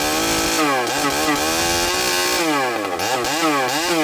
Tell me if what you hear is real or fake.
real